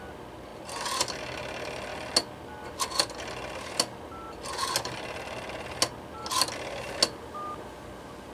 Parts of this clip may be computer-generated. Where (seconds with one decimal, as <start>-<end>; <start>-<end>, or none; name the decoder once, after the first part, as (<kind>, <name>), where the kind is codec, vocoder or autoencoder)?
none